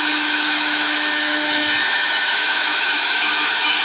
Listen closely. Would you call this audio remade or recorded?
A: remade